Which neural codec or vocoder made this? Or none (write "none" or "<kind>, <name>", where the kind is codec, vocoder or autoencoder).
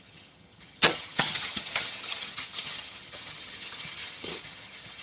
vocoder, HiFi-GAN